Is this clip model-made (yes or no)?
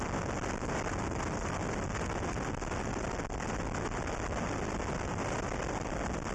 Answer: no